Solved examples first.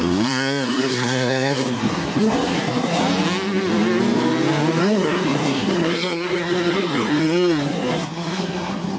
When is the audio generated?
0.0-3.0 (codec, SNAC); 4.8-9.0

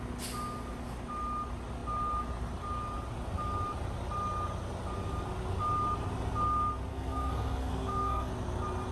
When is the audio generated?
6.9-8.3 (codec, SNAC)

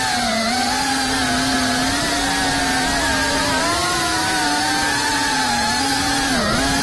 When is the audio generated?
none